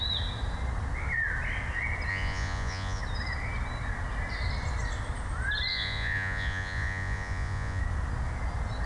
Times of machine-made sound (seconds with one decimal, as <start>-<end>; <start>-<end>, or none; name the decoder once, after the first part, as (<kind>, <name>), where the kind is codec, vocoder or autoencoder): 2.1-3.0 (vocoder, Vocos); 5.7-7.8